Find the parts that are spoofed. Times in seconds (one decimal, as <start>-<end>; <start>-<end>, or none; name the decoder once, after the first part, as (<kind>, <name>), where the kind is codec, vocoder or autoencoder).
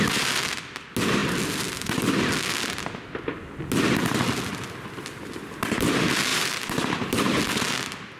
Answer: 6.3-7.4 (vocoder, BigVGAN v2)